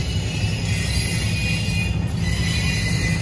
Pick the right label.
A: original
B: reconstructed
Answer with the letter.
A